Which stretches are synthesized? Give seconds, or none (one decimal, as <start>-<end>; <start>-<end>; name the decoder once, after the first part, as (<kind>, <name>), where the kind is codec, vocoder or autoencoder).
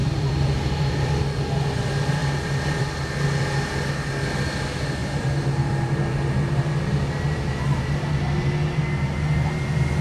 0.0-1.2 (vocoder, BigVGAN v2); 2.2-2.9